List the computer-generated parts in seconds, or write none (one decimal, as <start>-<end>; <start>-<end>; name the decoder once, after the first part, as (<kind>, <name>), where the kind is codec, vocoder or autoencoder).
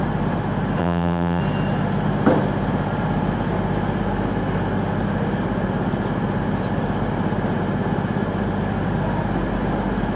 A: 0.8-1.4 (vocoder, BigVGAN v2)